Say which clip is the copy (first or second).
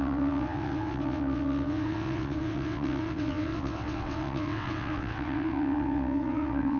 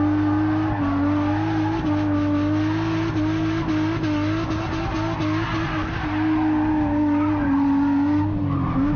first